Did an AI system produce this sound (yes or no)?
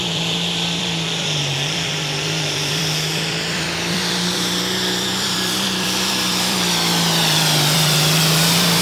yes